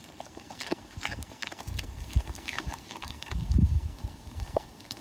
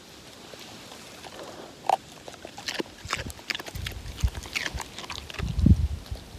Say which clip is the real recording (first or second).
second